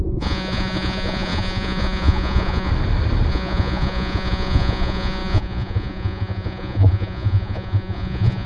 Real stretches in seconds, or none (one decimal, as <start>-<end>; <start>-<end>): 2.7-3.3